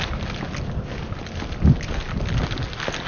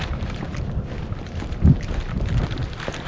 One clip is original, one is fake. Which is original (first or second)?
first